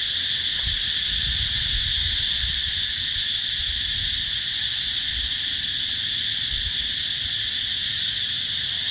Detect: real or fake real